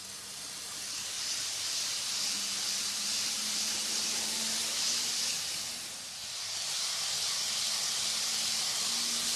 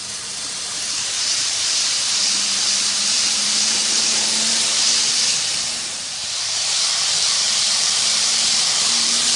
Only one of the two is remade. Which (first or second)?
second